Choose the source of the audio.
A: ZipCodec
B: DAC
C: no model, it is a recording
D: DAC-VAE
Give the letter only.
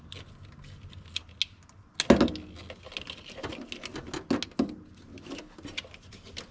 C